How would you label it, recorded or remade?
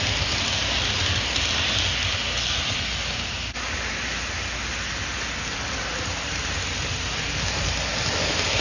recorded